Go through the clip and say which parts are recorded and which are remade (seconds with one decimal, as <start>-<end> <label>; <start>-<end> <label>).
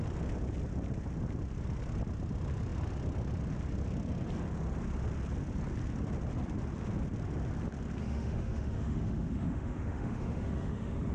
0.0-8.0 recorded; 8.0-11.1 remade